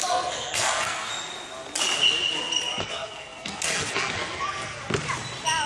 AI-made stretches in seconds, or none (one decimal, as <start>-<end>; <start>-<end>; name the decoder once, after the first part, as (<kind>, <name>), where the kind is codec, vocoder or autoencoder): 0.0-1.1 (codec, SNAC); 2.8-4.8